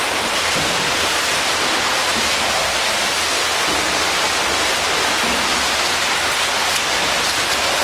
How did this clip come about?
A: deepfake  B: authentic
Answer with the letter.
B